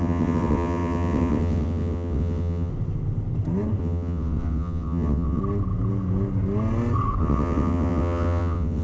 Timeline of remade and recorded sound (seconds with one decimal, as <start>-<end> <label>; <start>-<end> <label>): 0.0-2.7 remade; 2.7-3.8 recorded; 3.8-5.4 remade; 5.4-7.2 recorded; 7.2-8.8 remade